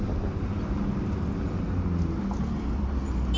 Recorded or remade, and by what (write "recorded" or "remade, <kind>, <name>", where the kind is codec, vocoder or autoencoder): recorded